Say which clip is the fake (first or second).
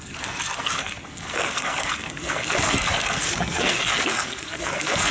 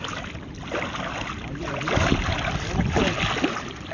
first